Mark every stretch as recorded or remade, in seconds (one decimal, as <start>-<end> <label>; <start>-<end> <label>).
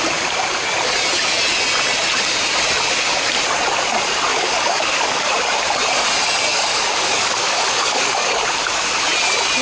0.0-4.3 recorded; 4.3-5.3 remade; 5.3-6.5 recorded; 6.5-8.4 remade; 8.4-9.6 recorded